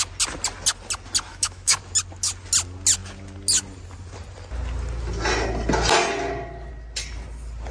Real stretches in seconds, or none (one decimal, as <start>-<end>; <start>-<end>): 0.0-1.3; 1.8-7.7